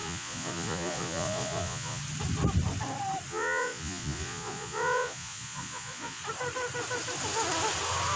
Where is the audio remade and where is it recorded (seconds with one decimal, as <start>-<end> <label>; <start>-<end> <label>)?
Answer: 0.0-2.0 remade; 2.0-3.3 recorded; 3.3-6.2 remade; 6.2-8.2 recorded